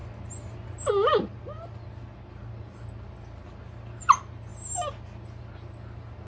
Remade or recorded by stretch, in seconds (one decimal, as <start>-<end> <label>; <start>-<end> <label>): 0.0-6.3 recorded